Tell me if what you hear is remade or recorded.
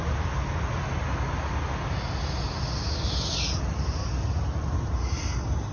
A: recorded